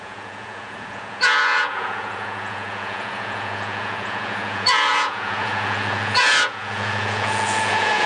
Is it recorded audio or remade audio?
remade